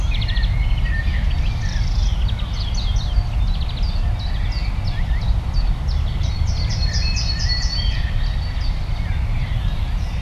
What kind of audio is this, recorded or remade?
recorded